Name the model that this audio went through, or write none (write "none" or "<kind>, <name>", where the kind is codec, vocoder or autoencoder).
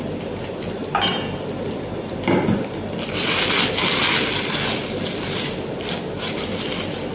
none